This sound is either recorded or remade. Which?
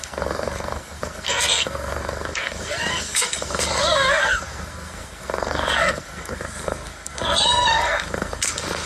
remade